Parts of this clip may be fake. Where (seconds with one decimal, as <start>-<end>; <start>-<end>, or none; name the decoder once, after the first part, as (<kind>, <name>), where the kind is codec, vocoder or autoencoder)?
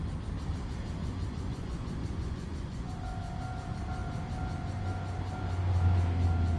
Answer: 1.0-2.9 (vocoder, Vocos)